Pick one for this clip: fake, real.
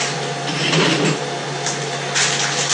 real